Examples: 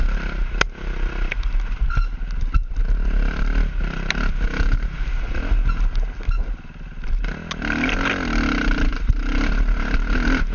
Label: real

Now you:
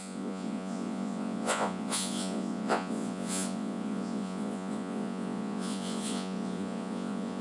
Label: fake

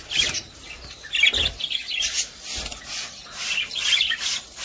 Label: real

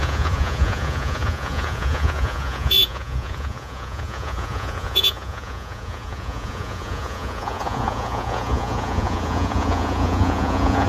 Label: fake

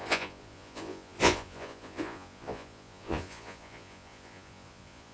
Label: fake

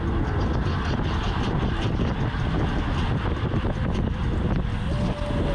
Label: real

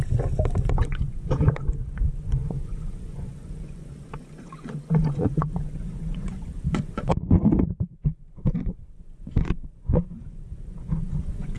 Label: fake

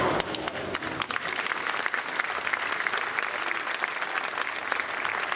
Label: real